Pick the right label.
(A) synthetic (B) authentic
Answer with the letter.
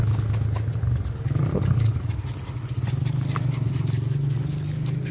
B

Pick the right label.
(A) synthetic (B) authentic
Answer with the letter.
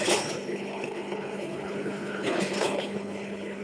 A